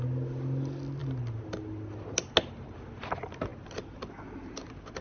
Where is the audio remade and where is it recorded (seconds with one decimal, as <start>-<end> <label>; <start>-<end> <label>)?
0.0-5.0 recorded